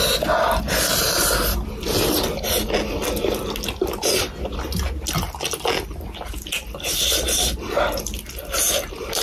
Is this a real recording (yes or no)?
yes